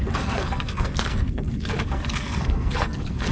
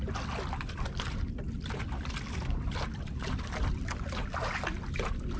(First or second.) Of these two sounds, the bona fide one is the second